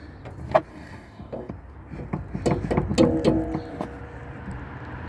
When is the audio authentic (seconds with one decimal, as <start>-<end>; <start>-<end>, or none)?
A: 0.0-0.7; 1.5-5.1